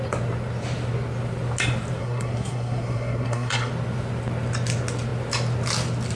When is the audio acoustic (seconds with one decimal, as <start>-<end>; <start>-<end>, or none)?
0.0-2.0; 3.7-6.2